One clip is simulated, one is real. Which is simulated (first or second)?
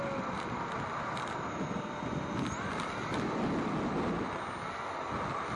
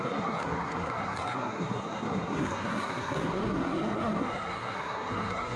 second